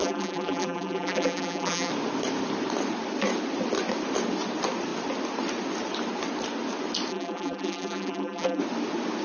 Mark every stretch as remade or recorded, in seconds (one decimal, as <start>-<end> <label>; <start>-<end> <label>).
0.0-1.9 remade; 1.9-7.1 recorded; 7.1-8.6 remade; 8.6-9.2 recorded